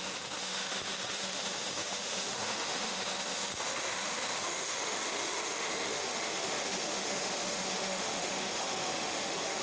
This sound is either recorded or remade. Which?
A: remade